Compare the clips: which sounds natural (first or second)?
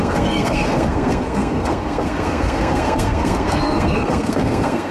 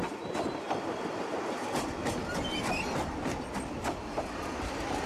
second